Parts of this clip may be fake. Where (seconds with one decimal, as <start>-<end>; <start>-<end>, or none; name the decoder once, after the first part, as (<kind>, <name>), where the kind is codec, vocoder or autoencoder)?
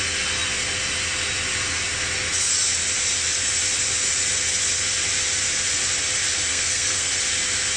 6.5-7.1 (codec, SNAC)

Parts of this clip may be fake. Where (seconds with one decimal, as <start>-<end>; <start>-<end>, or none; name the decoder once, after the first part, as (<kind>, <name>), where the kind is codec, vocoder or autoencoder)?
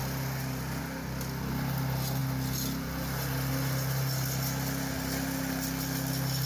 none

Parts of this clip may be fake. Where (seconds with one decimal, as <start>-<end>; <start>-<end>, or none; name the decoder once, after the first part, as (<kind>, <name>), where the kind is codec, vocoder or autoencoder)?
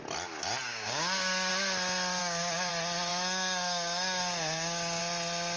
0.7-1.5 (codec, DAC); 2.2-2.7; 3.1-5.0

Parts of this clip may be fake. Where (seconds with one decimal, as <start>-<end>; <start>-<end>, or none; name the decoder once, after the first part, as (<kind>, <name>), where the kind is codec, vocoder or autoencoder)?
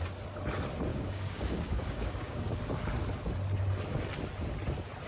0.9-2.6 (codec, DAC)